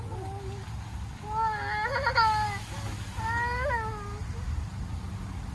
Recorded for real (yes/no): yes